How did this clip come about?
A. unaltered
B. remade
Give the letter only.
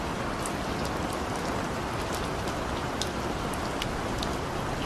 A